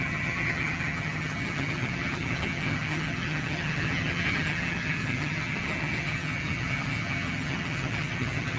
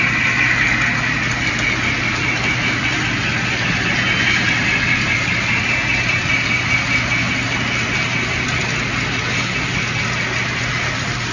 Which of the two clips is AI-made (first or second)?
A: first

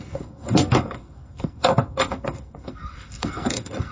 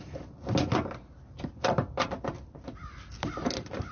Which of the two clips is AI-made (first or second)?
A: first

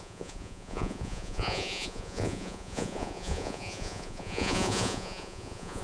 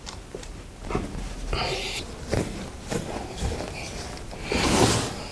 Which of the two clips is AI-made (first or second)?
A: first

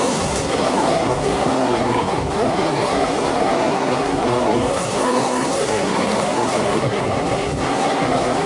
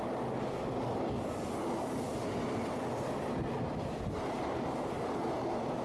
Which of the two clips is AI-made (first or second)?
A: first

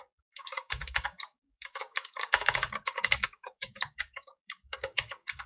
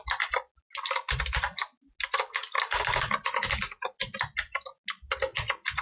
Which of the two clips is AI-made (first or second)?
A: first